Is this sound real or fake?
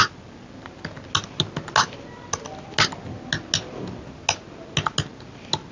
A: real